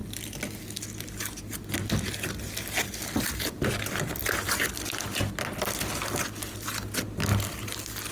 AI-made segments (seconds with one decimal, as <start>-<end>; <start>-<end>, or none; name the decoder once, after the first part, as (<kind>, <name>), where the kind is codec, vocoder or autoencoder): none